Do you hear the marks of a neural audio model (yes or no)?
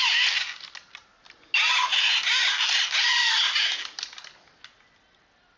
no